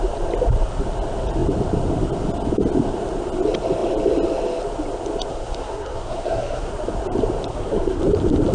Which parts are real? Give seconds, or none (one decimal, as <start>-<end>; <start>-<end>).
0.0-5.3; 6.7-7.5; 8.0-8.5